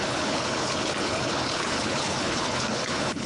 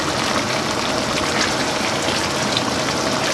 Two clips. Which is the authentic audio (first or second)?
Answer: second